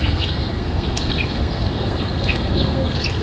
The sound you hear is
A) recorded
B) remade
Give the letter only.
B